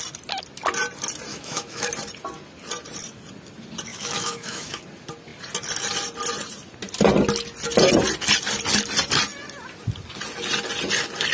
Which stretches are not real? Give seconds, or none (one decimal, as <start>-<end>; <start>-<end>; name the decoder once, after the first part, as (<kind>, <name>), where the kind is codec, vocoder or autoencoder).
1.3-1.9 (autoencoder, DAC-VAE); 3.9-4.8